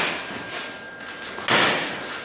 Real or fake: real